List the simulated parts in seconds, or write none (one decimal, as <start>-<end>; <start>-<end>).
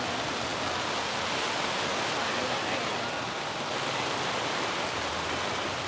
none